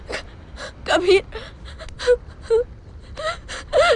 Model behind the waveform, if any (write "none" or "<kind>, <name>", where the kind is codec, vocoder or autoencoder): none